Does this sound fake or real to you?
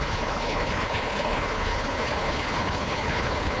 fake